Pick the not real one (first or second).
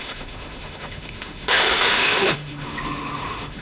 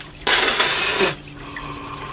first